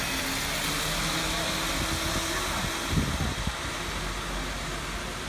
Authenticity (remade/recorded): recorded